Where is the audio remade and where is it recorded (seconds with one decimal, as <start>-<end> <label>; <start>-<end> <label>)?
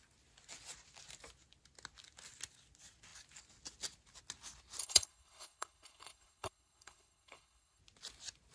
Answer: 0.0-4.8 recorded; 4.8-7.8 remade; 7.8-8.5 recorded